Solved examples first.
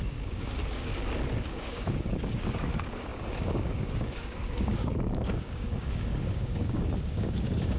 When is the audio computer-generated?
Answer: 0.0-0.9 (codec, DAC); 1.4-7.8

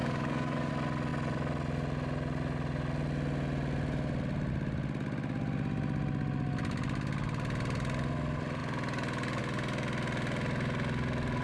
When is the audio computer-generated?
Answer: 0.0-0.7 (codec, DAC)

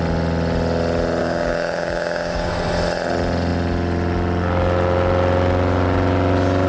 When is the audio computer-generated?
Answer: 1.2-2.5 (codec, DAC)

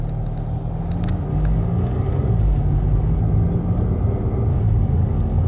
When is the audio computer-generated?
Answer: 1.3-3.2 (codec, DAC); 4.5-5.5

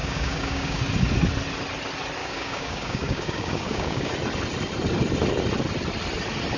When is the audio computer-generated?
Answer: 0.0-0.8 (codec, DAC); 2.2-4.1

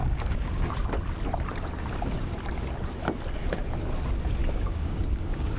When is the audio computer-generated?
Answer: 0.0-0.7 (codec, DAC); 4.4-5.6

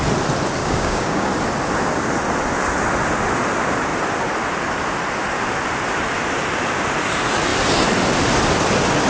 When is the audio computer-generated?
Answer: 0.6-1.3 (codec, DAC)